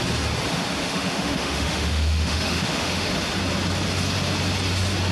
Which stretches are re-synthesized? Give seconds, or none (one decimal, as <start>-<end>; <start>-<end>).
0.8-3.1